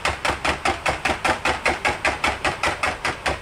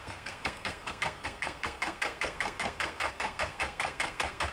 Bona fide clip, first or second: first